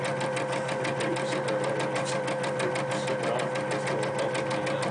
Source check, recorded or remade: recorded